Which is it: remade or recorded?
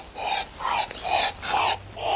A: recorded